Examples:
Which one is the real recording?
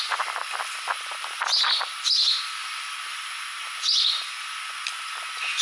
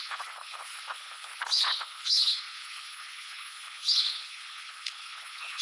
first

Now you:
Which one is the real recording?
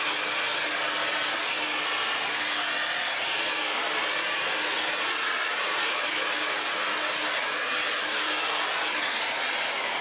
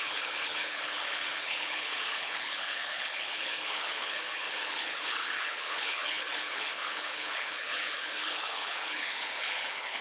first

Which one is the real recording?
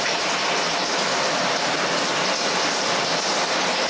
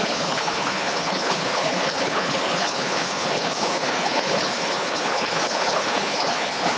first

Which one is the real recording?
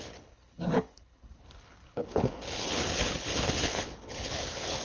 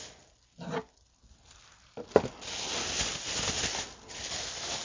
second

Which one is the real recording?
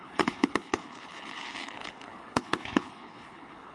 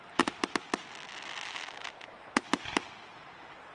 second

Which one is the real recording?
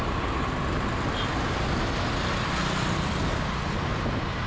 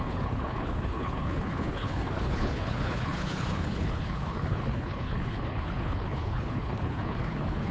first